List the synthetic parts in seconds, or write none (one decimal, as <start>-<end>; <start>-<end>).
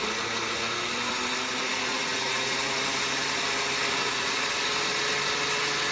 1.7-2.8; 4.0-4.5